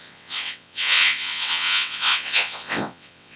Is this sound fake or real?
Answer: fake